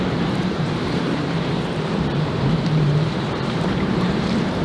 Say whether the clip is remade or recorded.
remade